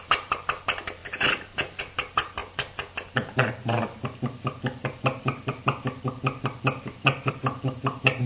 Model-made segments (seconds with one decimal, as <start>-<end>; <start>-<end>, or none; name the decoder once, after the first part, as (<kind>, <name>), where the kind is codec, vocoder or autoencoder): 0.0-8.3 (vocoder, BigVGAN v2)